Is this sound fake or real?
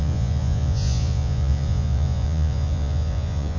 fake